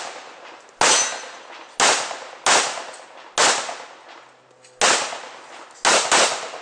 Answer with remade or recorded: recorded